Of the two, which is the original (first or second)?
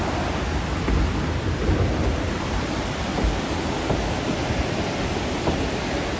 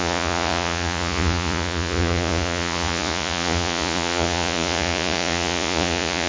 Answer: first